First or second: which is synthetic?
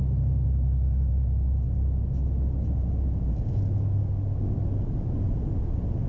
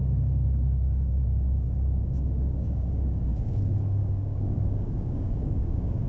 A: second